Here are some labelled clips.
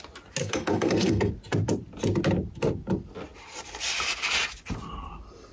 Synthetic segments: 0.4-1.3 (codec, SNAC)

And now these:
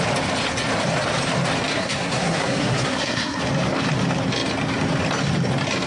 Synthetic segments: 1.7-3.4 (codec, SNAC)

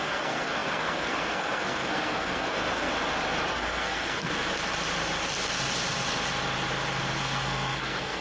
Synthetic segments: 0.0-2.9 (codec, SNAC); 3.5-4.3; 7.2-8.2

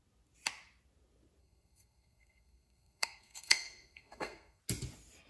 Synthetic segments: 1.4-4.6 (codec, SNAC)

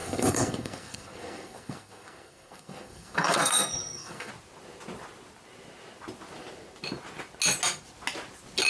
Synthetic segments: 0.0-4.3 (codec, SNAC)